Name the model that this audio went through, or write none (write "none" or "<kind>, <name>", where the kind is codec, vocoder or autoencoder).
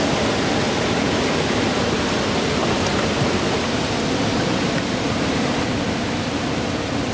none